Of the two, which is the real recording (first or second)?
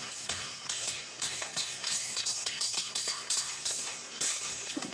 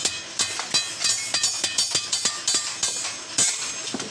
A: second